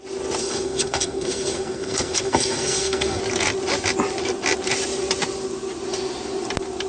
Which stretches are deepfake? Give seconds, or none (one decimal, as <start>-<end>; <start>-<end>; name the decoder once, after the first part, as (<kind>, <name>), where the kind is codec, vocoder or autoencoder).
0.4-3.2 (codec, SNAC)